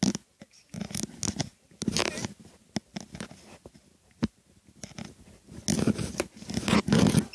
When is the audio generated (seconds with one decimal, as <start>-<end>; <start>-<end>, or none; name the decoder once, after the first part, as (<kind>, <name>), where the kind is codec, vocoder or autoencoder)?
none